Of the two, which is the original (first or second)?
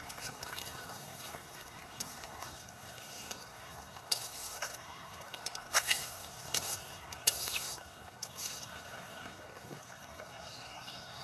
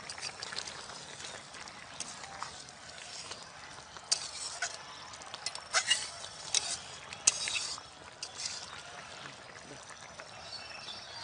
second